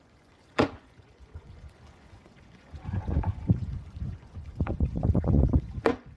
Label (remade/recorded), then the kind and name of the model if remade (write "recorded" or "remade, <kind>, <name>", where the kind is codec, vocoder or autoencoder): remade, vocoder, Vocos